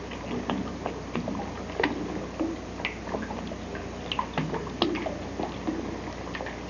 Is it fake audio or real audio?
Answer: real